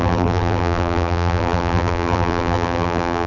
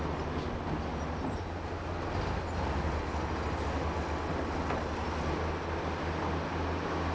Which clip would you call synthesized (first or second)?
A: first